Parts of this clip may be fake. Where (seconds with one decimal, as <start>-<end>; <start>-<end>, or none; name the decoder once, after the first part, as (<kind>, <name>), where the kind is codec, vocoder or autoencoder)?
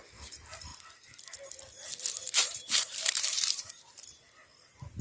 2.2-3.8 (vocoder, BigVGAN v2)